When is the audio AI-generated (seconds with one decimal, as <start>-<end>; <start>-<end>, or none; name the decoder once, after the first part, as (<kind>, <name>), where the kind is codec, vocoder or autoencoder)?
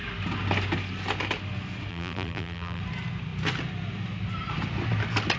1.9-2.8 (vocoder, BigVGAN v2)